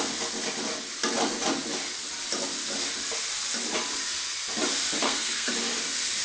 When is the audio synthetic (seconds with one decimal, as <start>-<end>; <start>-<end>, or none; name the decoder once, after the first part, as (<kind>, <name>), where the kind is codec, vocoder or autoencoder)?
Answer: 5.0-5.5 (codec, SNAC)